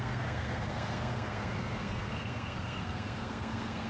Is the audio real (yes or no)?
no